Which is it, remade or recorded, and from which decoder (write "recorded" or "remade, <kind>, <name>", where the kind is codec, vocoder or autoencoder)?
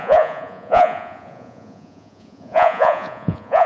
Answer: remade, vocoder, Vocos